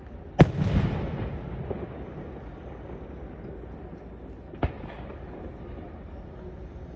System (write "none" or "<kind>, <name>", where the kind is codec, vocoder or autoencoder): none